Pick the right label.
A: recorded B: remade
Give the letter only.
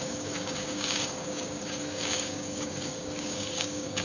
B